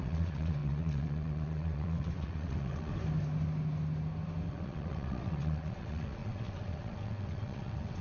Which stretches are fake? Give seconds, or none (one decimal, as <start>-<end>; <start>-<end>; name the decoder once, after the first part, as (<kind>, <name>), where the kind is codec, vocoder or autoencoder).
0.0-2.9 (vocoder, WaveNeXt); 4.5-8.0